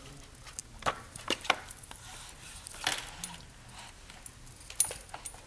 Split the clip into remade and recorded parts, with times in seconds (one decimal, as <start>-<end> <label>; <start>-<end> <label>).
0.0-0.6 recorded; 0.6-2.1 remade; 2.1-5.5 recorded